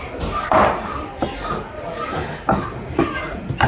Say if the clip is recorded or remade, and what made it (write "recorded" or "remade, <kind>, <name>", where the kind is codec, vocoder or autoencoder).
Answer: recorded